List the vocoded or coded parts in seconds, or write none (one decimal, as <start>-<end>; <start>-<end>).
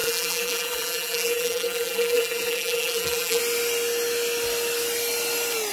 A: 0.0-3.4